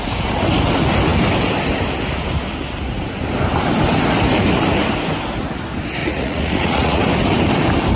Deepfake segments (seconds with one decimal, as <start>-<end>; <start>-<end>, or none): 6.0-7.0